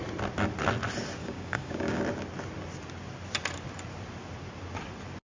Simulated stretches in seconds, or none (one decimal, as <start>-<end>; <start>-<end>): 1.2-2.0